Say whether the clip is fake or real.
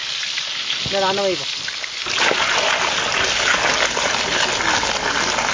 real